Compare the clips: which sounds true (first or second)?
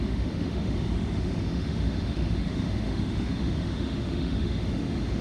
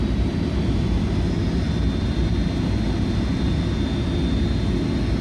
second